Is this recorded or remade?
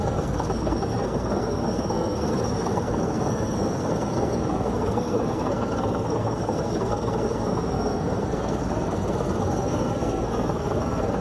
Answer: remade